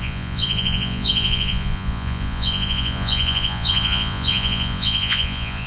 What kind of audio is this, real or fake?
fake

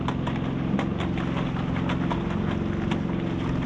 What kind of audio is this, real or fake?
real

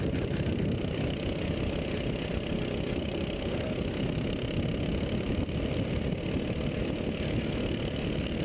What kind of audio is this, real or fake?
real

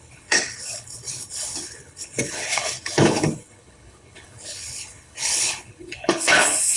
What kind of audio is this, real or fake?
fake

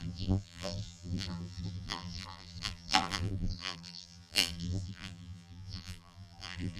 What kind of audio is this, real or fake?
fake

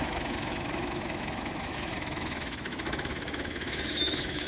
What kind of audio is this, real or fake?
fake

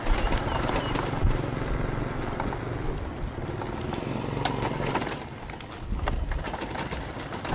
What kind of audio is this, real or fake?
real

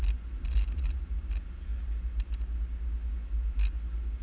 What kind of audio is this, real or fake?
real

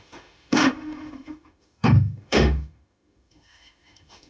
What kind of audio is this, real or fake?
fake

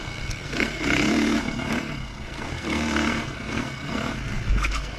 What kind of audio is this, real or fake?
fake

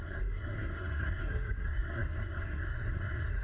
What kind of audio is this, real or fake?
fake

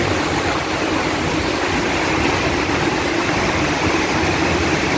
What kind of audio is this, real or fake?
real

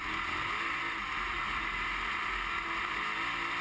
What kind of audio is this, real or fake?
real